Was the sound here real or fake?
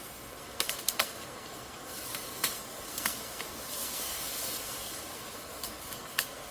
fake